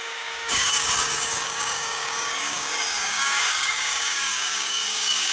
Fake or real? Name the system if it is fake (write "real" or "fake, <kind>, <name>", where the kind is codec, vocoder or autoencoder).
fake, codec, DAC